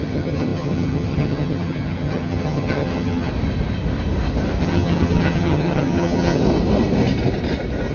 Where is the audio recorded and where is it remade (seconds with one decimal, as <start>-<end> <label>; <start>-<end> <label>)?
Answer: 0.0-3.3 remade; 3.3-4.6 recorded; 4.6-6.4 remade; 6.4-7.9 recorded

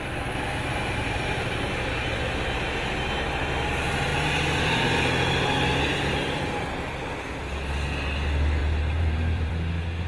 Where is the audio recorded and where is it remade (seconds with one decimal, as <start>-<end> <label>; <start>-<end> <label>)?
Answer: 0.0-0.7 recorded; 0.7-2.4 remade; 2.4-8.6 recorded; 8.6-9.5 remade; 9.5-10.1 recorded

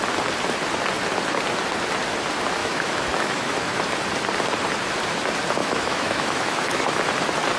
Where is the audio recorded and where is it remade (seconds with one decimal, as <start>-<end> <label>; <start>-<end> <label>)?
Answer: 0.0-2.6 recorded; 2.6-3.8 remade; 3.8-5.6 recorded; 5.6-7.0 remade; 7.0-7.6 recorded

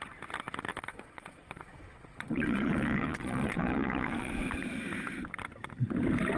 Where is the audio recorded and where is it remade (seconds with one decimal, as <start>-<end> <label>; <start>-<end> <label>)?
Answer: 0.0-0.7 recorded; 0.7-4.3 remade; 4.3-6.4 recorded

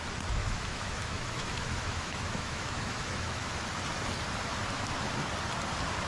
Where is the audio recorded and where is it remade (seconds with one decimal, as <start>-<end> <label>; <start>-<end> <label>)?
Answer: 0.0-0.4 recorded; 0.4-3.5 remade; 3.5-6.1 recorded